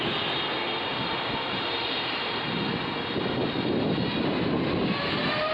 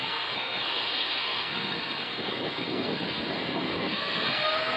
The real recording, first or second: first